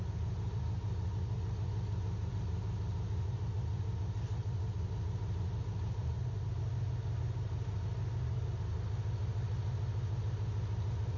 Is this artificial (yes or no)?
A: no